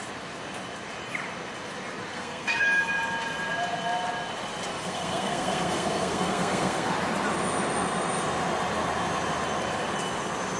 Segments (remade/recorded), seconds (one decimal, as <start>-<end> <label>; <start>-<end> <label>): 0.0-2.1 recorded; 2.1-2.8 remade; 2.8-4.7 recorded; 4.7-6.9 remade; 6.9-10.6 recorded